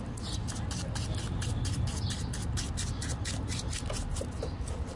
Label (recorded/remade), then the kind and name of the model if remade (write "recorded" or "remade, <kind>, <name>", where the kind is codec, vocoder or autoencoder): recorded